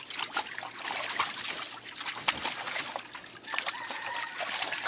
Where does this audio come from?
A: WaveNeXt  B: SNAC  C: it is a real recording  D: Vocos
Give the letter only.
C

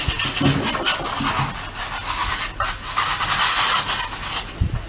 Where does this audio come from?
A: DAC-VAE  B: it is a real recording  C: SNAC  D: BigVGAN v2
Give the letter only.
B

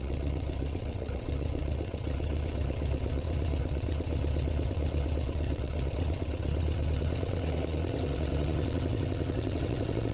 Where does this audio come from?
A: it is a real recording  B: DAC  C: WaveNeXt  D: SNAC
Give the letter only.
C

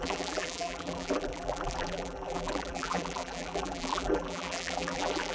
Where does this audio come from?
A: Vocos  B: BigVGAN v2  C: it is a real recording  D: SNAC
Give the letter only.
B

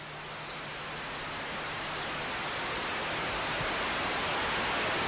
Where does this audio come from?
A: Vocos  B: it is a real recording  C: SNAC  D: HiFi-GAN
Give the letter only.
B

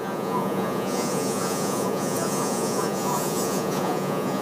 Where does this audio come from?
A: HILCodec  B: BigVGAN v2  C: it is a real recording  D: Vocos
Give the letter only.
D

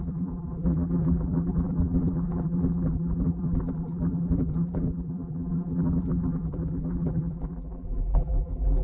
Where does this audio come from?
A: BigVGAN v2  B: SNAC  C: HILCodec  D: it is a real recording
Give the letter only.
A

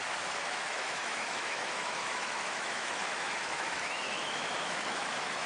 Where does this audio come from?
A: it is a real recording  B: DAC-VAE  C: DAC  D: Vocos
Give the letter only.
B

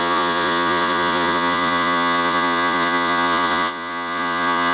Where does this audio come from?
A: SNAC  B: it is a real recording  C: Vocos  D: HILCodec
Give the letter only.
C